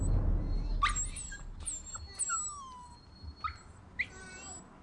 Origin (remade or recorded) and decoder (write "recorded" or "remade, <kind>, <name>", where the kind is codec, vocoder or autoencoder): recorded